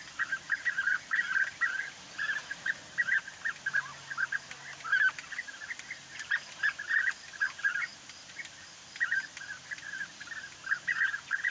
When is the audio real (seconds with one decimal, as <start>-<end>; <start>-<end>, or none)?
0.0-2.4; 3.5-11.5

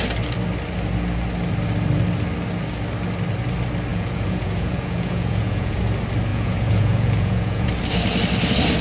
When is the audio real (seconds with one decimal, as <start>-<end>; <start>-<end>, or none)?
0.0-3.9; 5.8-6.3; 7.7-8.8